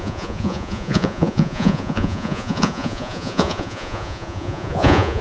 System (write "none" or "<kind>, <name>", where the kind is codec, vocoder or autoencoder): vocoder, Vocos